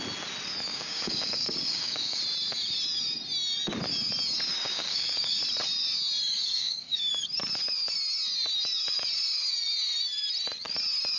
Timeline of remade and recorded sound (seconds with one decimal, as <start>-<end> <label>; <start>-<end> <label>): 0.0-0.7 recorded; 0.7-2.2 remade; 2.2-4.7 recorded; 4.7-5.4 remade; 5.4-6.4 recorded; 6.4-7.1 remade; 7.1-11.2 recorded

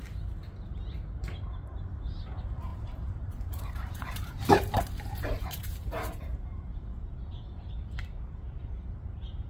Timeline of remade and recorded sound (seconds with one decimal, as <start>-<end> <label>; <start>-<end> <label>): 0.0-2.7 recorded; 2.7-7.7 remade; 7.7-8.6 recorded; 8.6-9.1 remade; 9.1-9.5 recorded